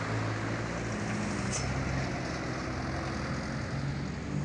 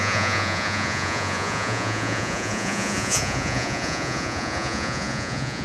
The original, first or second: first